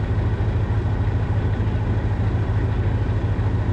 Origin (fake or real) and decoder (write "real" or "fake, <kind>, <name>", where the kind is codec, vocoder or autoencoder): real